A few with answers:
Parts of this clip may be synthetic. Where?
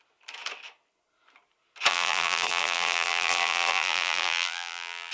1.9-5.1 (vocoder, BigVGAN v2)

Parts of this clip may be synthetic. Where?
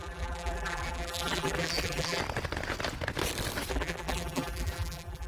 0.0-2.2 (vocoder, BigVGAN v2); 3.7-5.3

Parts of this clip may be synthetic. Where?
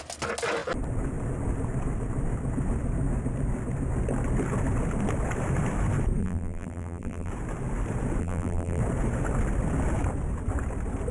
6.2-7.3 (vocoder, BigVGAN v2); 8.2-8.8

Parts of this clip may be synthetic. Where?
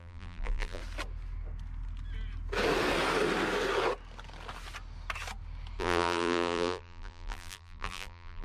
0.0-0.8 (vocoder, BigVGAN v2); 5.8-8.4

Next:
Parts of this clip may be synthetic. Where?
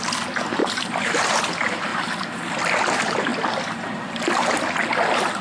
0.6-1.4 (vocoder, BigVGAN v2)